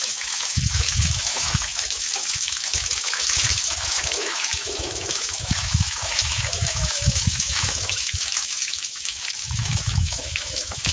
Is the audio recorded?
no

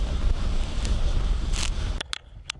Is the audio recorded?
yes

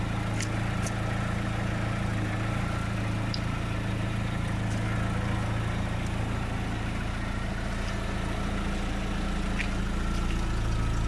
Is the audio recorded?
yes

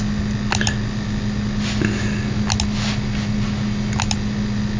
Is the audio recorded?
yes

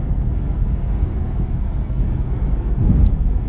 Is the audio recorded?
no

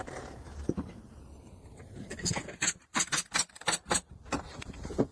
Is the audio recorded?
no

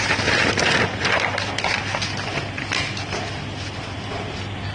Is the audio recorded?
yes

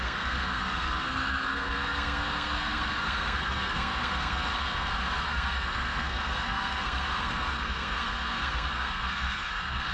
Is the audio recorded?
no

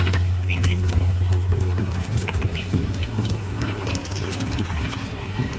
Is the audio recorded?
no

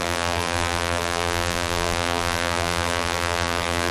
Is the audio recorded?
no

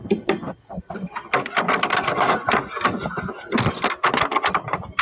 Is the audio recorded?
no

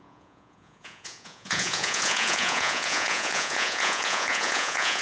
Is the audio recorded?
no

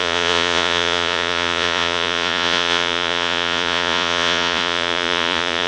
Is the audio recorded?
no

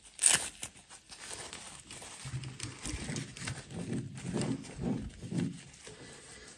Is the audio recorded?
yes